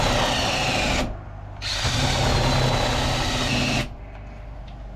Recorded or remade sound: recorded